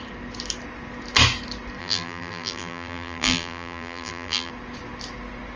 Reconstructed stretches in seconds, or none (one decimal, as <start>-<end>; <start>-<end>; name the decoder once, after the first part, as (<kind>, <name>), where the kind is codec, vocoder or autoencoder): 1.8-4.5 (vocoder, BigVGAN v2)